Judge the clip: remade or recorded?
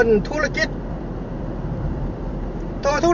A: remade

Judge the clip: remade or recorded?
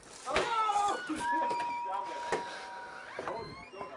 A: recorded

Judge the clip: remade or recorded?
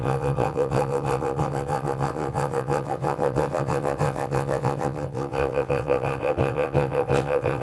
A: remade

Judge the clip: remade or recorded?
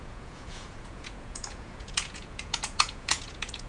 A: remade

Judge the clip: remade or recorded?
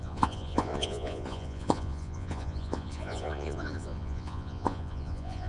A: remade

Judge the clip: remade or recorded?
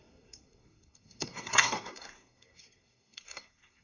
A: remade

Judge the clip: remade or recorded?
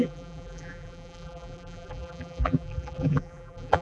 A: remade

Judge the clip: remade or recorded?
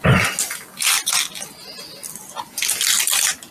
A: recorded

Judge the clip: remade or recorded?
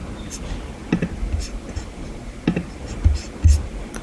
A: recorded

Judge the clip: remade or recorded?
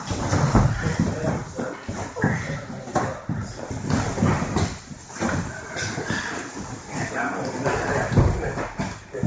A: recorded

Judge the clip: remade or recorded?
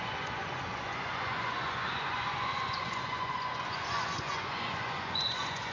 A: remade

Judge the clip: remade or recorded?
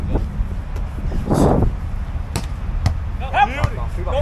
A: recorded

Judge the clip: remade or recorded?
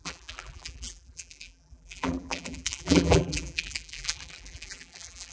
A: remade